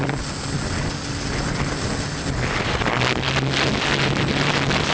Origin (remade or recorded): recorded